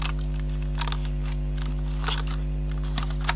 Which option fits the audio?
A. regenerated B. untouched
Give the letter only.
B